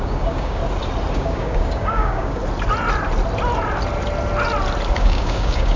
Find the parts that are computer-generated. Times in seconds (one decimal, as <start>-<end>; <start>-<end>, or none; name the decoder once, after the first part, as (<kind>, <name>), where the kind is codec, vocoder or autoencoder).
0.0-0.6 (codec, DAC); 1.1-2.4; 4.9-5.8